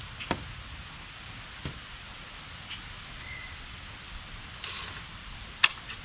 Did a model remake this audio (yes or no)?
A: no